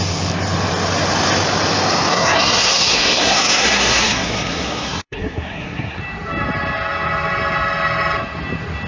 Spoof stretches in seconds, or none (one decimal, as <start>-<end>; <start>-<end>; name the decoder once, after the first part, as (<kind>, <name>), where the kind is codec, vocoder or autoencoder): 2.1-6.0 (codec, SNAC)